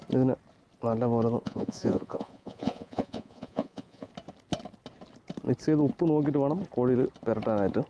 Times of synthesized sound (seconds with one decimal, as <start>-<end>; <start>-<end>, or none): 1.4-4.1